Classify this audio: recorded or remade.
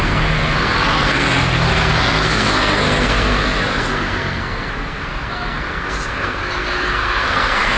remade